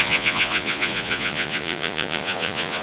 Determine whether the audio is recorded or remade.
remade